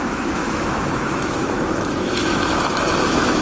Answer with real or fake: fake